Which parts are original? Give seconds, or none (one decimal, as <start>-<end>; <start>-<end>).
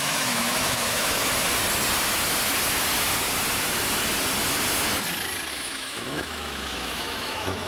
1.2-5.5